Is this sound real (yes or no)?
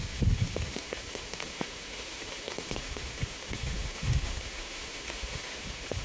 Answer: no